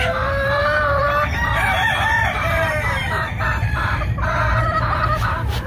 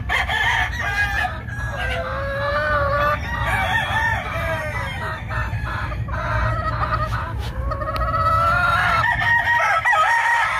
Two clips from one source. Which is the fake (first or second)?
first